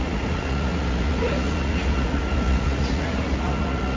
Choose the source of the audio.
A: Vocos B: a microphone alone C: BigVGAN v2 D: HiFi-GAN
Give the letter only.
A